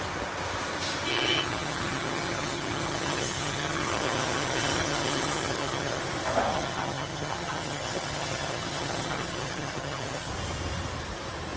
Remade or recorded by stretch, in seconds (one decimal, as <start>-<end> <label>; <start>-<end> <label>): 0.0-1.1 recorded; 1.1-6.0 remade; 6.0-6.5 recorded; 6.5-10.3 remade; 10.3-11.6 recorded